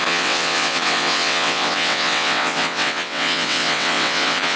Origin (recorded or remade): remade